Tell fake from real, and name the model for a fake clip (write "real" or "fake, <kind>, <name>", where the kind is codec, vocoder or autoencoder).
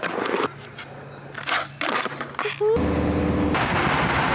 real